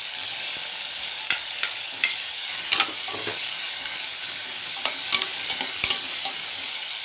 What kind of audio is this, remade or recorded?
remade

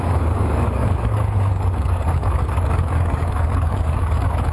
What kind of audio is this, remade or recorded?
remade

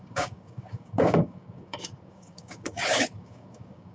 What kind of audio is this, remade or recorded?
remade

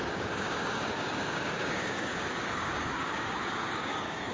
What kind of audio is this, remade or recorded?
remade